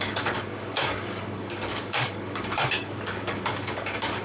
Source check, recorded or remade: remade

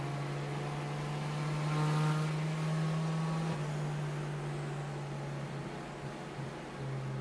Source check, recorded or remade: recorded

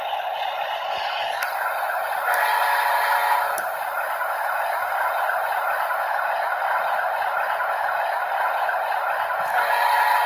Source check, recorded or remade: recorded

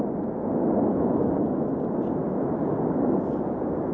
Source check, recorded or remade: recorded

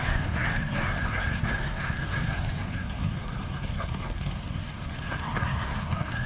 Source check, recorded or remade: remade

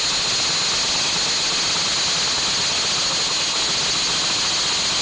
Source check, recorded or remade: recorded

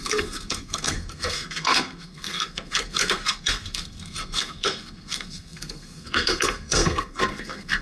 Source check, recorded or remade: remade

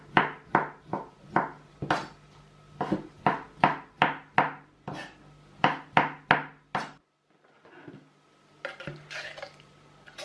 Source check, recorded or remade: recorded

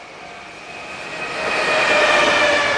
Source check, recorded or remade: recorded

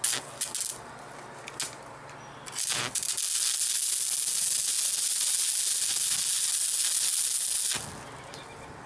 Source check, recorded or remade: recorded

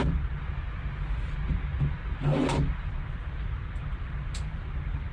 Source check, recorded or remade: recorded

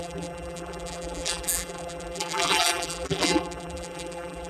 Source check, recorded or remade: remade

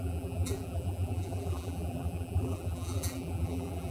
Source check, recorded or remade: remade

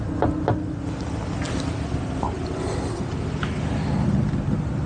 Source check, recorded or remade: recorded